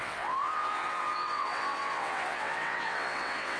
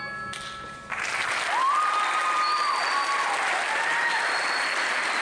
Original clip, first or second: second